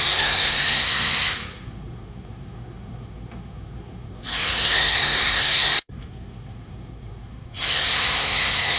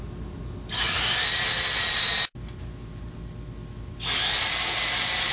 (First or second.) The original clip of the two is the second